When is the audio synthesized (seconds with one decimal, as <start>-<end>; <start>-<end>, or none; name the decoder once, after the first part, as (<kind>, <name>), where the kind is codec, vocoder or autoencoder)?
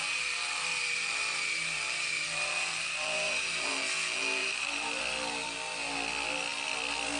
0.0-3.7 (vocoder, BigVGAN v2); 4.4-5.0